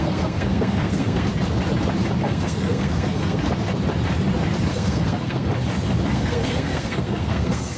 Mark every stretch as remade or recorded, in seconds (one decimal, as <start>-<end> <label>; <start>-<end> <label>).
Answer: 0.0-1.3 remade; 1.3-2.2 recorded; 2.2-3.4 remade; 3.4-4.7 recorded; 4.7-5.5 remade; 5.5-6.1 recorded; 6.1-7.8 remade